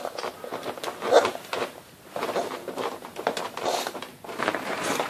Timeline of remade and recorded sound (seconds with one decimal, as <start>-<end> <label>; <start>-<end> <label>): 0.0-5.1 remade

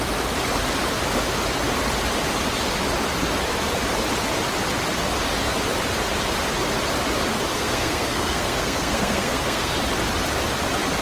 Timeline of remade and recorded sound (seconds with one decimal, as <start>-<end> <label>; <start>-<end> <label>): 0.0-7.5 recorded; 7.5-9.7 remade; 9.7-11.0 recorded